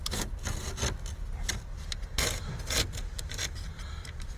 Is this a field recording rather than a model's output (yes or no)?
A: yes